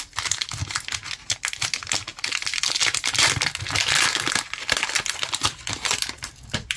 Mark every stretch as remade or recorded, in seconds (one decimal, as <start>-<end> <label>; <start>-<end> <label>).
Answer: 0.0-6.8 recorded